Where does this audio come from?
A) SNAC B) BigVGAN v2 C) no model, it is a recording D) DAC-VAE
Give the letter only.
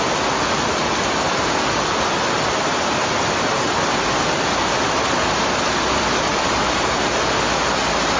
C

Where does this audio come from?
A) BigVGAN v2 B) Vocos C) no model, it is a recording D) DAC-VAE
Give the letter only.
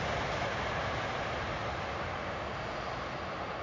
C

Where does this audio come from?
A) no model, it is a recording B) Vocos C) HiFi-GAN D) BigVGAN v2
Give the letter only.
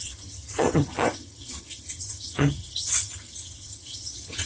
C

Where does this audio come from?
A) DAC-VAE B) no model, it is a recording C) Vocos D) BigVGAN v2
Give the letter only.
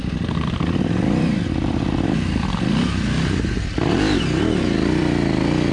D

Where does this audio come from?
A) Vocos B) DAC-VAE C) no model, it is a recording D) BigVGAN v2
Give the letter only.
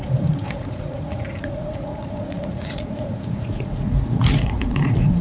A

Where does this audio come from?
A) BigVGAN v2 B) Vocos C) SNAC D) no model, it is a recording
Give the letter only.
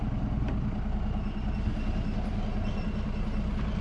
D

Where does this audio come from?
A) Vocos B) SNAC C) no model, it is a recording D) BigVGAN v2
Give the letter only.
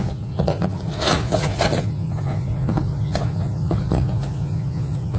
A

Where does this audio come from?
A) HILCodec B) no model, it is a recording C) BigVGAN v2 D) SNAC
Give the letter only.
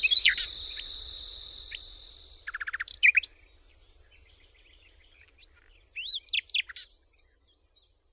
B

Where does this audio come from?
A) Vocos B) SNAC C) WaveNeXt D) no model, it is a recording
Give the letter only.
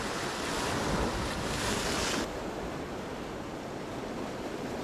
D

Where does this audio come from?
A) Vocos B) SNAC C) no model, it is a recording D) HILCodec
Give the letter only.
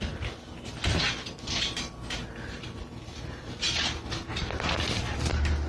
C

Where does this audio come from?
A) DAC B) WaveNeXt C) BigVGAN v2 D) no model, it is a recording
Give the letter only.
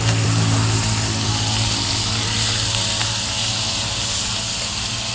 D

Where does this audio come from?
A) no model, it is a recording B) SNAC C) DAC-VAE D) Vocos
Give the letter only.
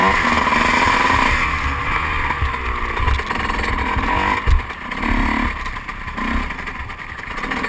A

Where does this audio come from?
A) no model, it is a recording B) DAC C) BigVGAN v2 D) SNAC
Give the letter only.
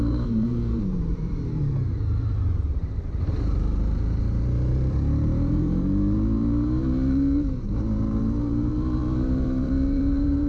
C